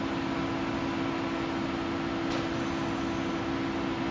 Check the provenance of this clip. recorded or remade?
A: recorded